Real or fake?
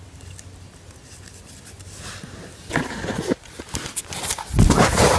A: real